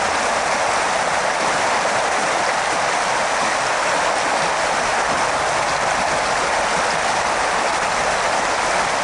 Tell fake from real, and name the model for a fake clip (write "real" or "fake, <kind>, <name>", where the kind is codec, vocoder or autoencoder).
real